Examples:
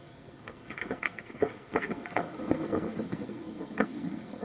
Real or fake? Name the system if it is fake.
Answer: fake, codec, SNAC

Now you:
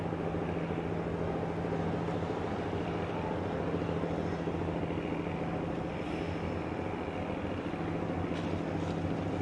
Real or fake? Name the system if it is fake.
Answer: real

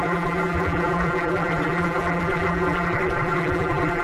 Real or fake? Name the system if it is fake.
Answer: fake, vocoder, BigVGAN v2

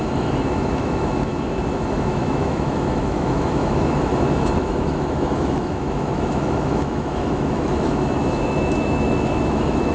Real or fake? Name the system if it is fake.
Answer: fake, autoencoder, DAC-VAE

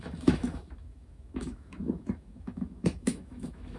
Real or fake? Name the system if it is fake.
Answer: fake, autoencoder, DAC-VAE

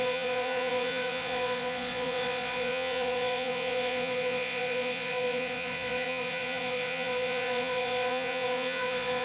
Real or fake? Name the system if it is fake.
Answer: fake, vocoder, Vocos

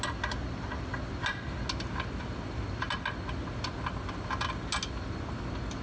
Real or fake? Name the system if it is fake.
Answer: real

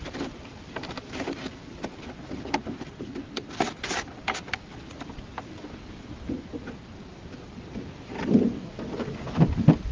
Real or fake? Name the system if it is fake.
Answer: real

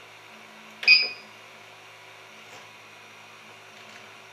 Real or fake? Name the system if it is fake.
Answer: real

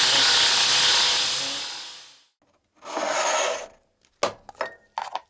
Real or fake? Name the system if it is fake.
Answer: real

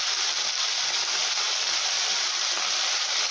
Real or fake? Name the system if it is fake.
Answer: real